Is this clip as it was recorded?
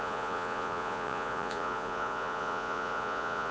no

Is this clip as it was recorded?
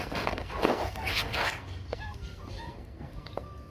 no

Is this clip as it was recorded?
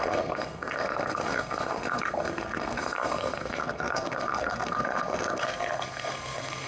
no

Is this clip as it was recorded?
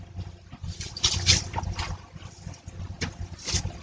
yes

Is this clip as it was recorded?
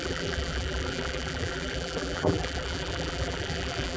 no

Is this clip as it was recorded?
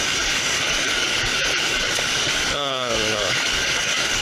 no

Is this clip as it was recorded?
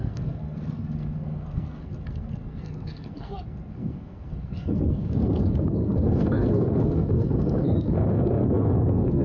no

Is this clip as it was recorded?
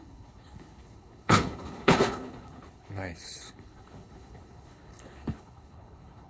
no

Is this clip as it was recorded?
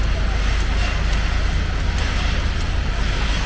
yes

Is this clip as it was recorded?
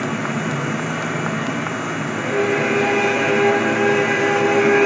yes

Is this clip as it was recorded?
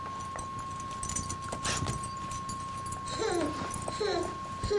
yes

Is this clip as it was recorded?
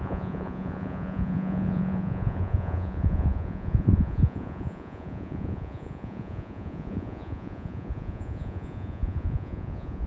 no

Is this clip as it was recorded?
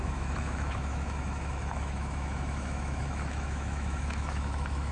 no